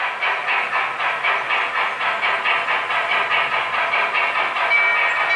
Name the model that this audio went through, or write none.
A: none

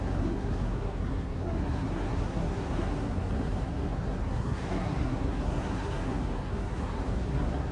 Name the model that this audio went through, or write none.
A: codec, SNAC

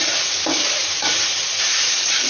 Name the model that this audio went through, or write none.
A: none